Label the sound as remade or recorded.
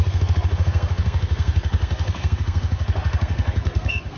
remade